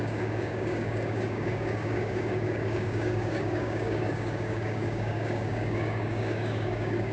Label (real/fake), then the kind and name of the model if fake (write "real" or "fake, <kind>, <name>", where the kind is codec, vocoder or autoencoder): fake, codec, DAC